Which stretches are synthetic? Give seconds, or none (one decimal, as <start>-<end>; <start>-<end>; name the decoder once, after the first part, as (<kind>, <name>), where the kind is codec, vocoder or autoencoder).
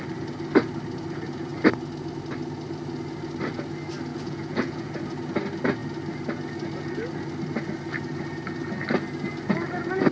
4.1-4.9 (vocoder, Vocos)